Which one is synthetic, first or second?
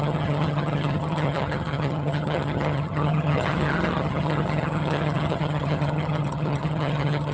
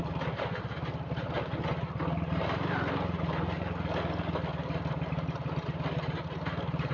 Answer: first